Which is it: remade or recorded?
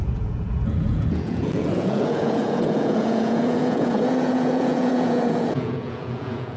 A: remade